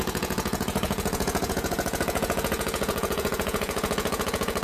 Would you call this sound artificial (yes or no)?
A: yes